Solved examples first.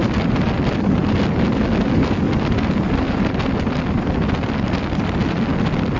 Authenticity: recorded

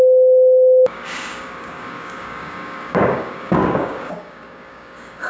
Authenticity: remade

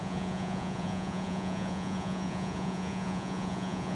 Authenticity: remade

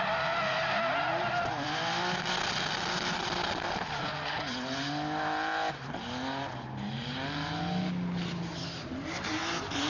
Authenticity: recorded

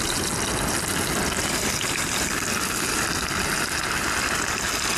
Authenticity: recorded